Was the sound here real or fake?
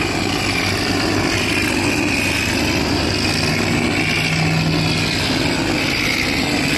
real